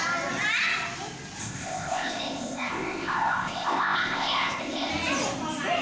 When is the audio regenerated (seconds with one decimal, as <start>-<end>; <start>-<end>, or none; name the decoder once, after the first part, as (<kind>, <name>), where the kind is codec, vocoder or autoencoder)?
1.4-4.9 (codec, ZipCodec)